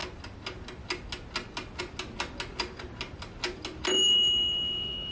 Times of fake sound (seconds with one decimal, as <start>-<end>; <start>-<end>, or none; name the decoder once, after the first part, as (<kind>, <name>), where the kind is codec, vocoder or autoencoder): 3.9-5.1 (autoencoder, DAC-VAE)